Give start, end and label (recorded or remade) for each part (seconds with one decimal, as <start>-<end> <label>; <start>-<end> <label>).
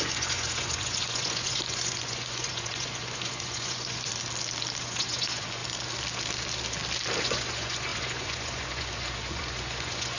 0.0-4.1 remade; 4.1-4.8 recorded; 4.8-5.6 remade; 5.6-7.2 recorded; 7.2-10.2 remade